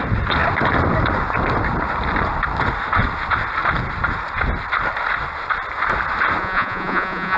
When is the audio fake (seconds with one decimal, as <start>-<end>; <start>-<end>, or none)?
6.4-7.4